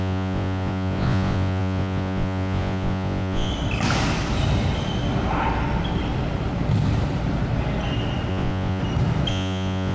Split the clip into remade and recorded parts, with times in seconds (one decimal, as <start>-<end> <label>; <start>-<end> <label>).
0.0-3.5 remade; 3.5-8.3 recorded; 8.3-8.8 remade; 8.8-9.3 recorded; 9.3-9.9 remade